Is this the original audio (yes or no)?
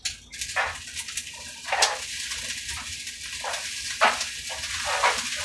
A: yes